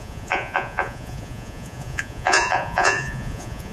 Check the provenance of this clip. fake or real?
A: fake